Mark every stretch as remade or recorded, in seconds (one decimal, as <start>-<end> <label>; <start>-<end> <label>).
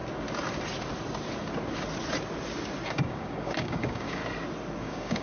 0.0-2.9 recorded; 2.9-4.2 remade; 4.2-4.8 recorded; 4.8-5.2 remade